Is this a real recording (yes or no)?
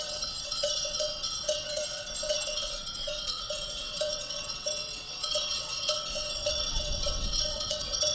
no